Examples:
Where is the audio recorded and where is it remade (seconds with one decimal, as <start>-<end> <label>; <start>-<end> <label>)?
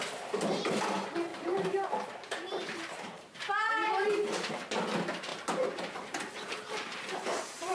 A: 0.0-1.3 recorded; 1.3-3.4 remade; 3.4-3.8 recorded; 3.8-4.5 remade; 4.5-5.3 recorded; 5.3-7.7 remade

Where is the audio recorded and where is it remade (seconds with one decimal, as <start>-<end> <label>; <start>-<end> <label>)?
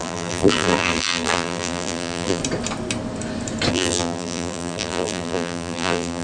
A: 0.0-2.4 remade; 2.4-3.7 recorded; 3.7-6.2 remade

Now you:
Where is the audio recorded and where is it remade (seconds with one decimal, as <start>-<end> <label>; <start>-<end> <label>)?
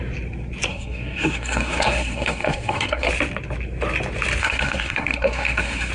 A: 0.0-0.7 recorded; 0.7-3.1 remade; 3.1-4.4 recorded; 4.4-5.9 remade